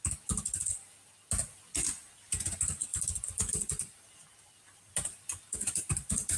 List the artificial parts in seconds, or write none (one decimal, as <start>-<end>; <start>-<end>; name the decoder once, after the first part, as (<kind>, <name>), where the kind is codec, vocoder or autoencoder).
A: 2.9-6.4 (vocoder, BigVGAN v2)